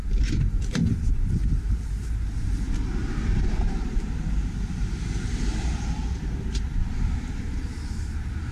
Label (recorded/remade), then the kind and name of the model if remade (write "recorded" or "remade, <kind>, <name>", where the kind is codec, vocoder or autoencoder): remade, vocoder, BigVGAN v2